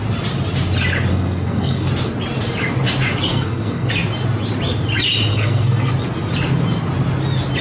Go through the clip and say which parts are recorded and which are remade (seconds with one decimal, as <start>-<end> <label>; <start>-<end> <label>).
0.0-1.1 recorded; 1.1-1.9 remade; 1.9-3.3 recorded; 3.3-3.9 remade; 3.9-5.3 recorded; 5.3-5.9 remade; 5.9-7.6 recorded